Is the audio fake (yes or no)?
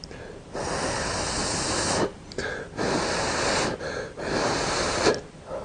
no